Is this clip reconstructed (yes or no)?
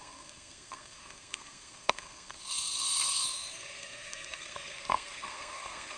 yes